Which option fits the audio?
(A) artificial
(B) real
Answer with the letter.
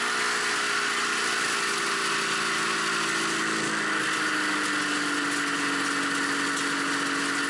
B